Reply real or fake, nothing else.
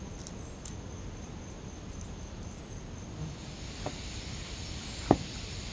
real